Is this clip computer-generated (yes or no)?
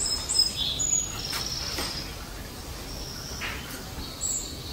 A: no